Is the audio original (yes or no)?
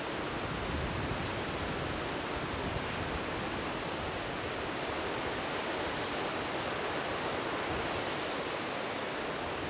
yes